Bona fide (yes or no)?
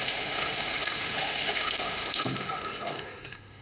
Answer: no